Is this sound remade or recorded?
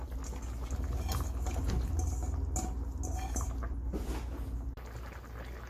recorded